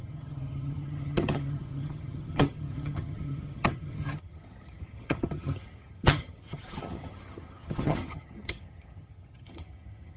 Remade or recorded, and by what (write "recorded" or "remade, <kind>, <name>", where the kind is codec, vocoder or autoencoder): remade, vocoder, HiFi-GAN